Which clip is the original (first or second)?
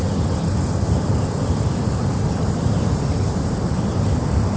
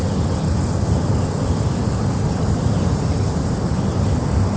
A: second